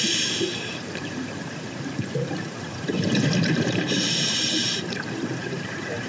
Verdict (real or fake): fake